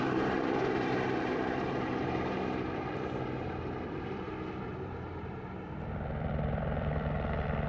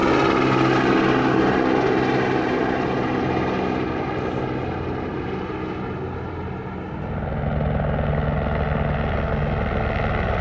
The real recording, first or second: second